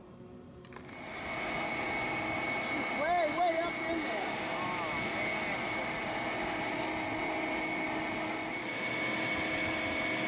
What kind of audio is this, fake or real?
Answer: real